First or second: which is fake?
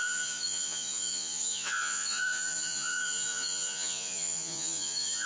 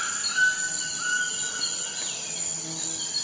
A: first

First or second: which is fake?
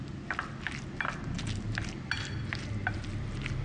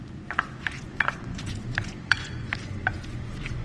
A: second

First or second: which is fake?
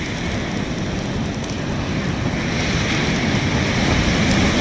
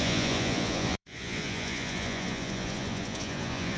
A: second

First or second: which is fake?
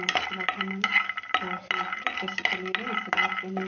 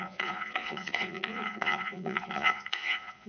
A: second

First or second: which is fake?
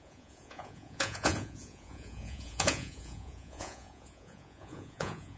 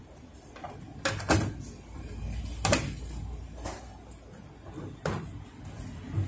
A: first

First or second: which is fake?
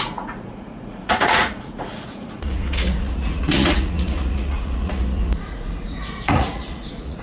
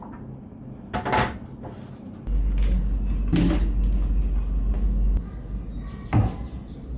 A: first